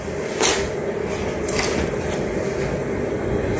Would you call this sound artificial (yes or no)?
no